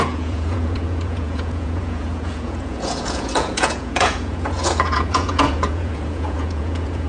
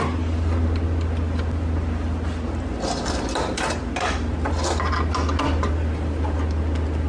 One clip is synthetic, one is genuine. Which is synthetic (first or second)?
first